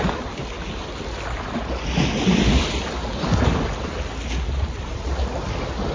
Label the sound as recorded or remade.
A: recorded